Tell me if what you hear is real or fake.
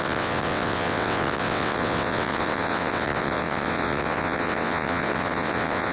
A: fake